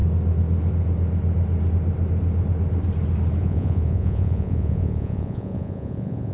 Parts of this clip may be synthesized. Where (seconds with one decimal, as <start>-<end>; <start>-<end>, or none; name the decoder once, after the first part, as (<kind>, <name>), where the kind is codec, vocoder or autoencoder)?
3.4-6.3 (vocoder, Vocos)